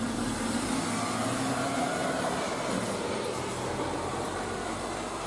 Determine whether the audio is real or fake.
real